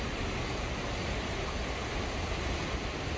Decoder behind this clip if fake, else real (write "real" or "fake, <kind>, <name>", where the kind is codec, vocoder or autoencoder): real